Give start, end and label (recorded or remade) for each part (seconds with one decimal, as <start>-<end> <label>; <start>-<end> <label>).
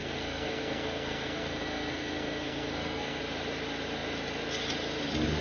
0.0-3.2 remade; 3.2-5.4 recorded